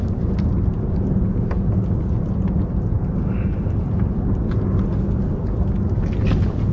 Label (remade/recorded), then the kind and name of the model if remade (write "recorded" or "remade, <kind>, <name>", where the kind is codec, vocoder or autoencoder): recorded